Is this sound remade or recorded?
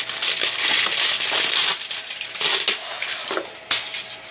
recorded